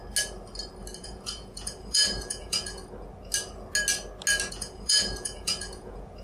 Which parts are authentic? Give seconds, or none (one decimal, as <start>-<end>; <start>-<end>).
0.0-1.0; 2.8-4.5